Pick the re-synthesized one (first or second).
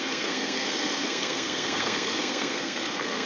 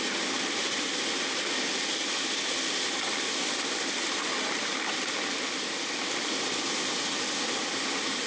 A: first